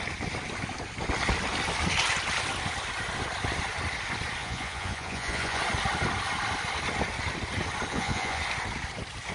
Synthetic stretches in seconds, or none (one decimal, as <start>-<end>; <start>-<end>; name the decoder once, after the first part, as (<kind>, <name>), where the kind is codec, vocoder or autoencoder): 4.4-5.6 (vocoder, Vocos); 7.9-8.4